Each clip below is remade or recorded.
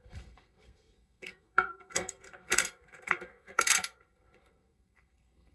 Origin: remade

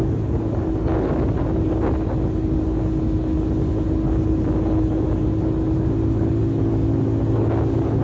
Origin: recorded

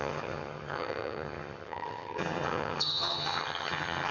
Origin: remade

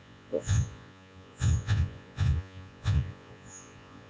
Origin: remade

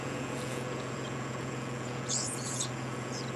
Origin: remade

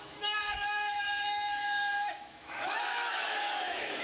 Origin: remade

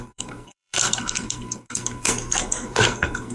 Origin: remade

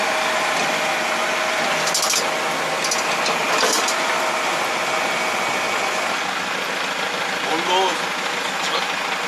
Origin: recorded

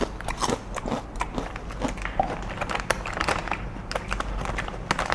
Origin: recorded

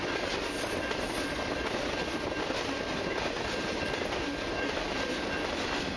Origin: recorded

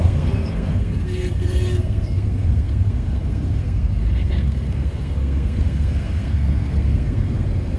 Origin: remade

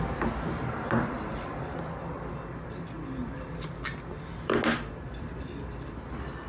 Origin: recorded